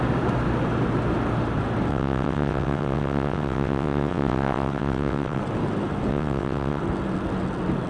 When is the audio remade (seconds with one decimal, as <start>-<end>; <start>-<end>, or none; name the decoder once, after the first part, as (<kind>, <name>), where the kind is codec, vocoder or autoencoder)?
1.9-5.4 (vocoder, WaveNeXt); 6.1-6.8